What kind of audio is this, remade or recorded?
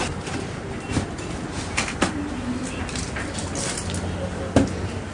recorded